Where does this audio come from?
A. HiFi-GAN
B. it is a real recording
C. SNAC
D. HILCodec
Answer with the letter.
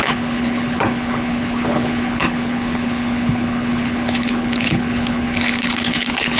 D